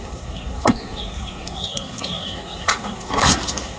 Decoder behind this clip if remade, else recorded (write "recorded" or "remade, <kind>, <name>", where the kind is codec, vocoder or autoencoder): remade, codec, SNAC